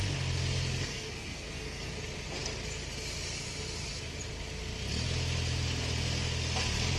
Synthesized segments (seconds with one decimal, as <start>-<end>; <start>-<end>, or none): 0.8-1.9